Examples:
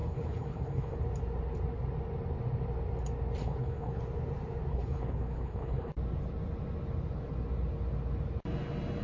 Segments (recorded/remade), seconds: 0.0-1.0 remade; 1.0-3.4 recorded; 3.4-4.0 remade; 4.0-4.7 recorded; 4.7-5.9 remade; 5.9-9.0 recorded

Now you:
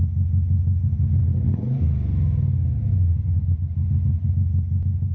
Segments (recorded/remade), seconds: 0.0-1.2 recorded; 1.2-1.9 remade; 1.9-5.1 recorded